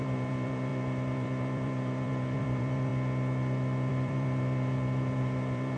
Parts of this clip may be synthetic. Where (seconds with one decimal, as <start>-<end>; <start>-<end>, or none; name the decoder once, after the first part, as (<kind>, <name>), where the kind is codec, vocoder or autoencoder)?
0.0-2.9 (vocoder, BigVGAN v2); 3.9-5.8